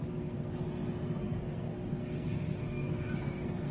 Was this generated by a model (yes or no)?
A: yes